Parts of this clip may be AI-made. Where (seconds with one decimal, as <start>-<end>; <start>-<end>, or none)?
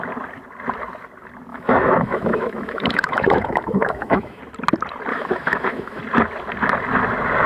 1.5-4.4; 5.1-6.0